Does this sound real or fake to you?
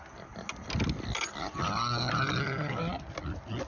real